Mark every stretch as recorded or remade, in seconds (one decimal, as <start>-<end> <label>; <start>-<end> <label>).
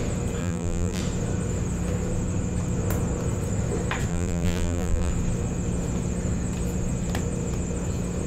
0.0-0.4 recorded; 0.4-1.0 remade; 1.0-4.1 recorded; 4.1-5.1 remade; 5.1-8.3 recorded